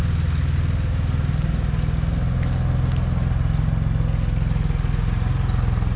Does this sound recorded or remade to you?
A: recorded